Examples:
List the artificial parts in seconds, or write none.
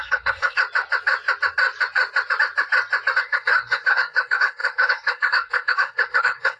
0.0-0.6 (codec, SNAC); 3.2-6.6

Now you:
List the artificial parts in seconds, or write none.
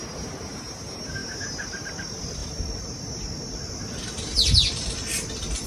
none